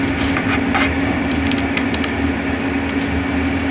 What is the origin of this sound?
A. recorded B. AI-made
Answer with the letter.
A